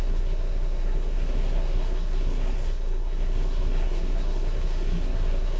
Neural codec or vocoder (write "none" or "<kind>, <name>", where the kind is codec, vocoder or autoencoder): codec, SNAC